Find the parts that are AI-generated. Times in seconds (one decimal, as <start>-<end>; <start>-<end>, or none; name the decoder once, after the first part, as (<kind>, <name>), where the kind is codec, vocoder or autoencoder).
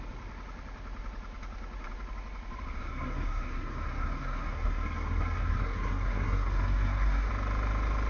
2.8-7.3 (codec, SNAC)